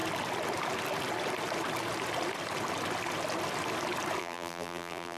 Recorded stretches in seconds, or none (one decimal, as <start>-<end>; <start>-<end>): 0.0-4.2